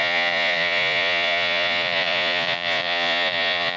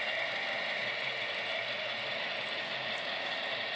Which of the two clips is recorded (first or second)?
second